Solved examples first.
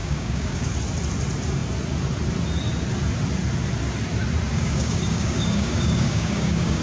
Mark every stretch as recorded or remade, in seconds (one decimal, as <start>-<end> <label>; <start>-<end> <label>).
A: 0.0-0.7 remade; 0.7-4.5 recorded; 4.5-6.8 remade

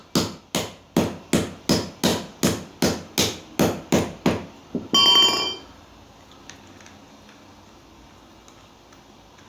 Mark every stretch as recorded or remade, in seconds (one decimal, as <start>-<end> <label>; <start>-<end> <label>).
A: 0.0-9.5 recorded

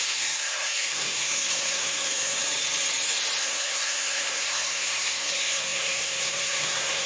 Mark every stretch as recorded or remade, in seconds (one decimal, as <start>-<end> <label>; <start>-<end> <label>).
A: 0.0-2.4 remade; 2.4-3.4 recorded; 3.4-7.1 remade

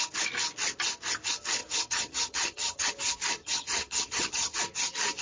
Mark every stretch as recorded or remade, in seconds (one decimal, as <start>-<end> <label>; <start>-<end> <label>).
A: 0.0-1.6 recorded; 1.6-2.9 remade; 2.9-3.4 recorded; 3.4-4.6 remade; 4.6-5.2 recorded